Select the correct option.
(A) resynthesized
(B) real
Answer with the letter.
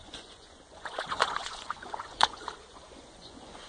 A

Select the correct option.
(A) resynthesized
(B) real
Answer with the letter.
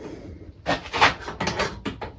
B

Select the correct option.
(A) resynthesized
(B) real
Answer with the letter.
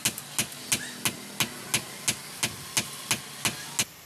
B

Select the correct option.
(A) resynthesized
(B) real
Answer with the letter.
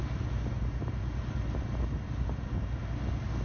B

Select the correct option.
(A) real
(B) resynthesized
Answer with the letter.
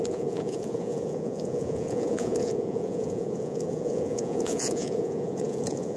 B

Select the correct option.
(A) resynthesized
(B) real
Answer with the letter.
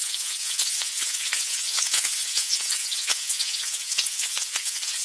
A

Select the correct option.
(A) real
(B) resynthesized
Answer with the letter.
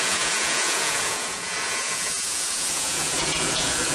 B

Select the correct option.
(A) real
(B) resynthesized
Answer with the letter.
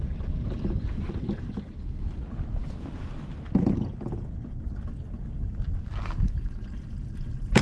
A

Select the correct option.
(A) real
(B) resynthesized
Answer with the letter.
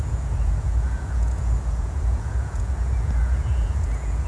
B